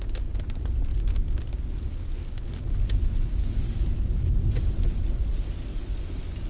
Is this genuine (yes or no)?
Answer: yes